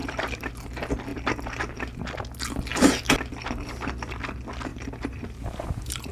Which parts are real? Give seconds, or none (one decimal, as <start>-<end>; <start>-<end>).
0.5-1.1; 2.0-4.7